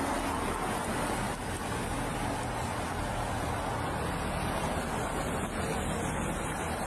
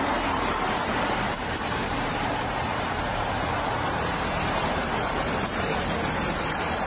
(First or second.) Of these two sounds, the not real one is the second